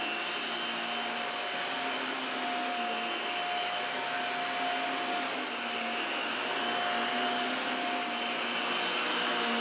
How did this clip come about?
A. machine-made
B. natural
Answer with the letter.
B